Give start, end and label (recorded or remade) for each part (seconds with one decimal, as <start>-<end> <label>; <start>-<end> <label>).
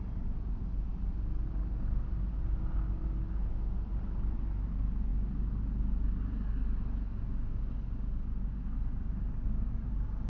0.0-10.3 recorded